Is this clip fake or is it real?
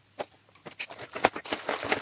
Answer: real